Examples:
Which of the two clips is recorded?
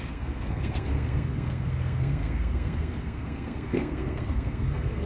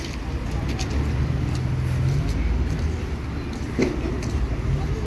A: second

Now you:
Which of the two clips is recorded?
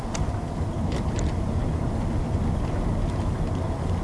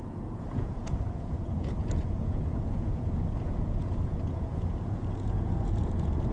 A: first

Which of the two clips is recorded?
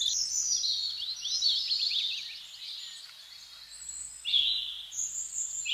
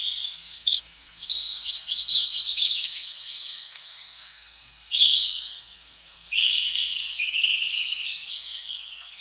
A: first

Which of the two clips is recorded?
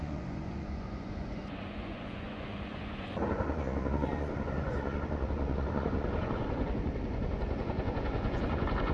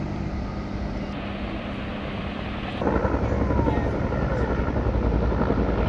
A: second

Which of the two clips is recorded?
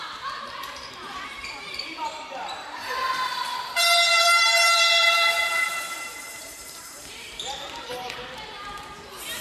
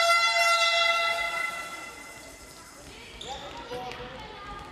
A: second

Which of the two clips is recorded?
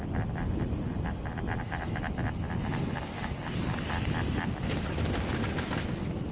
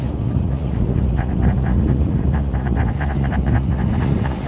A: first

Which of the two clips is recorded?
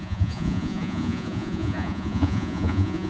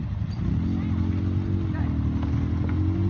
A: second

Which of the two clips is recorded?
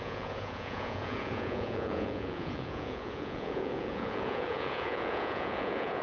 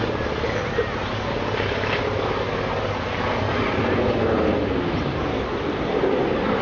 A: second